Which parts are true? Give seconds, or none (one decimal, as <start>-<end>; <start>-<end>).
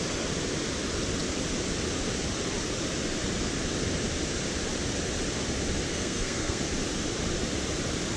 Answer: 0.0-5.9; 6.6-8.2